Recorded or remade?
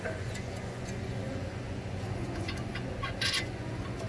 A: remade